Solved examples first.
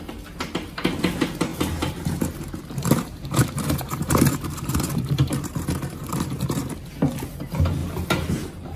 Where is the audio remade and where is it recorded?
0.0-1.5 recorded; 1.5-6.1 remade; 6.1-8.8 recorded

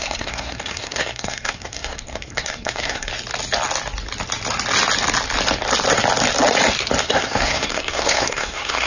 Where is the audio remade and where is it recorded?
0.0-3.1 remade; 3.1-7.0 recorded; 7.0-8.9 remade

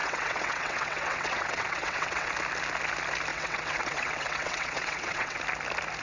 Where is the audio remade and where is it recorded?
0.0-2.3 remade; 2.3-3.3 recorded; 3.3-5.4 remade; 5.4-6.0 recorded

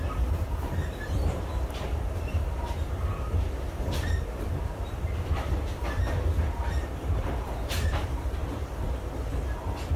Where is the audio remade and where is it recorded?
0.0-10.0 remade

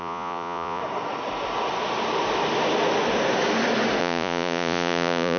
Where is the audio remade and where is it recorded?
0.0-0.8 remade; 0.8-4.0 recorded; 4.0-5.4 remade

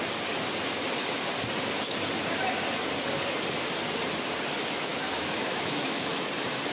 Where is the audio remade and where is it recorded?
0.0-4.9 recorded; 4.9-6.3 remade; 6.3-6.7 recorded